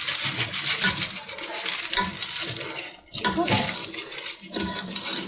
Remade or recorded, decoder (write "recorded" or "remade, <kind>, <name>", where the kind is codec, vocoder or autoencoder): recorded